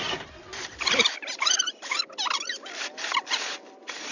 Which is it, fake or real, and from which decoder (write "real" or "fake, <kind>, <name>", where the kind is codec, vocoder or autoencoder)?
real